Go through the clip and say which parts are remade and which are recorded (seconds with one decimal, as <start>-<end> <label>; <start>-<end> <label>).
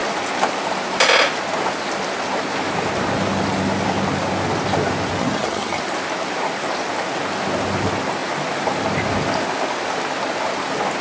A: 0.0-5.2 recorded; 5.2-5.8 remade; 5.8-11.0 recorded